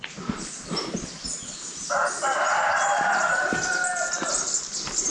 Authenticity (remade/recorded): recorded